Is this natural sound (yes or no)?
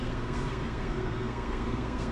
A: no